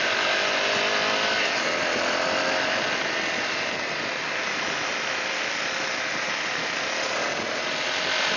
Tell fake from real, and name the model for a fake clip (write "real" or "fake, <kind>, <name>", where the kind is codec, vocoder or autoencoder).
real